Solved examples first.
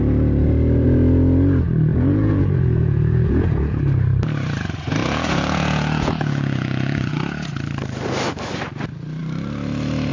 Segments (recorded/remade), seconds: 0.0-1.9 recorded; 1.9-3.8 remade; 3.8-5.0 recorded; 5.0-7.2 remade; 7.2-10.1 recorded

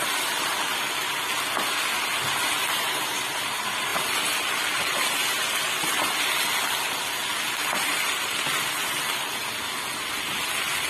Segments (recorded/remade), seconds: 0.0-10.9 recorded

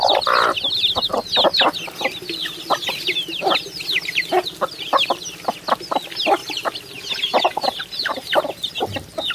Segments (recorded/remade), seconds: 0.0-6.4 recorded; 6.4-8.4 remade; 8.4-9.3 recorded

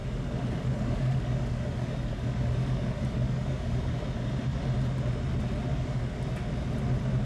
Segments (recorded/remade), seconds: 0.0-4.3 remade; 4.3-5.7 recorded; 5.7-6.2 remade; 6.2-7.2 recorded